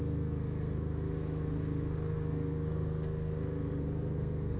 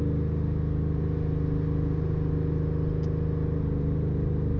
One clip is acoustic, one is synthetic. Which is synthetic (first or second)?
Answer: first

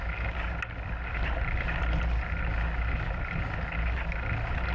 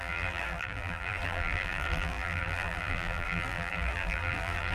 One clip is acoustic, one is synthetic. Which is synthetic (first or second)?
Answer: second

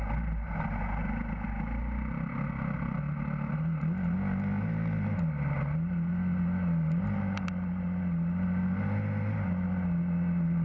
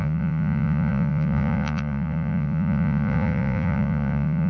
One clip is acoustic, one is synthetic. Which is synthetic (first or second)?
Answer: second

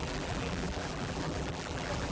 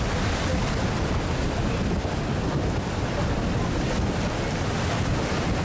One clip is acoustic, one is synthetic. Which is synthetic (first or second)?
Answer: first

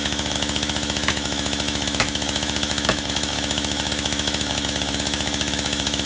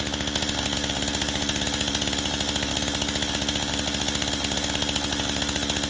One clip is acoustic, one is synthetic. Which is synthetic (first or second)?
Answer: first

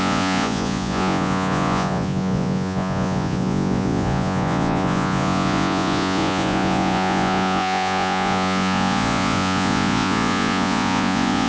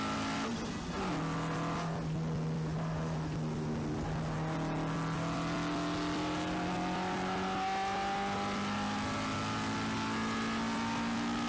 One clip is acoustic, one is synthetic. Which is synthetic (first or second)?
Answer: first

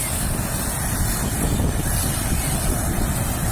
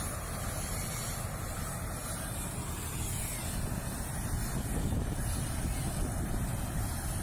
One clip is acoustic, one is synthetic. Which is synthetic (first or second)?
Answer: first